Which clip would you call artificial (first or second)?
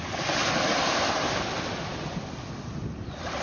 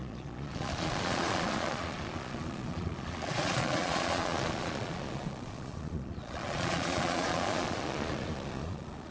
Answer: second